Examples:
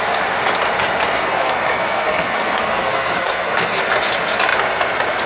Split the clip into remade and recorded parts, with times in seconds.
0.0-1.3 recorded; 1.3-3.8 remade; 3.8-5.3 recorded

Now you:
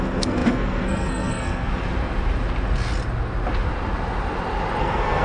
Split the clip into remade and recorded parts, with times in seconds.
0.0-1.7 remade; 1.7-4.8 recorded; 4.8-5.2 remade

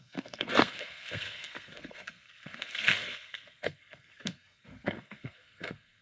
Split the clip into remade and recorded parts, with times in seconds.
0.0-6.0 remade

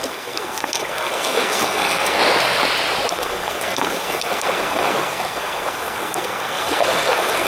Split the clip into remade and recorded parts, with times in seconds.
0.0-2.2 remade; 2.2-3.1 recorded; 3.1-7.5 remade